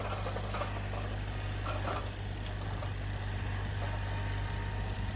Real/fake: real